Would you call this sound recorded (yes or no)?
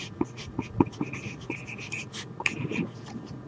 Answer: no